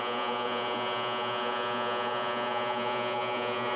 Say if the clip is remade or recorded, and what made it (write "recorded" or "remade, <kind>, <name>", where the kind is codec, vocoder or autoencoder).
remade, vocoder, Vocos